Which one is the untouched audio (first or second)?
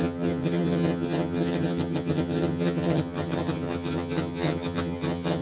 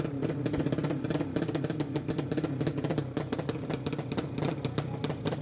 second